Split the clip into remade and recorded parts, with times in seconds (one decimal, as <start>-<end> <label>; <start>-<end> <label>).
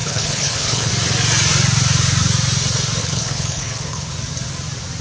0.0-0.9 remade; 0.9-3.0 recorded; 3.0-4.1 remade; 4.1-5.0 recorded